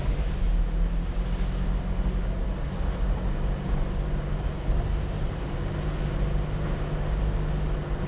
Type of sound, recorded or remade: recorded